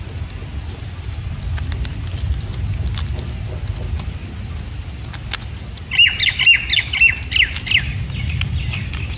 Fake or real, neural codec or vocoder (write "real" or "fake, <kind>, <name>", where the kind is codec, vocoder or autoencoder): real